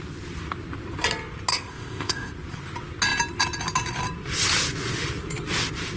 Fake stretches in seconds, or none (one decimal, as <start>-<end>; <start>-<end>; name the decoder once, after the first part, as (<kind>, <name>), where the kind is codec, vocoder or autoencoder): 1.5-2.3 (codec, ZipCodec)